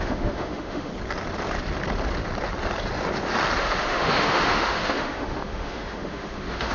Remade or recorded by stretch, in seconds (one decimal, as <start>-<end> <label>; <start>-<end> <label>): 0.0-0.9 remade; 0.9-3.6 recorded; 3.6-6.7 remade